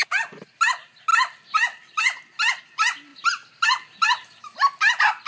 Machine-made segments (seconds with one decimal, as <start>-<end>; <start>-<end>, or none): none